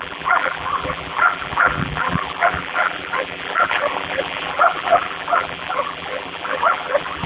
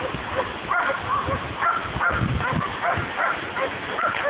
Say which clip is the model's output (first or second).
first